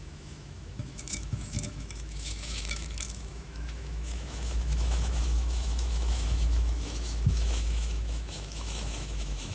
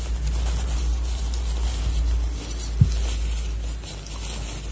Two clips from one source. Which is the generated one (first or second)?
first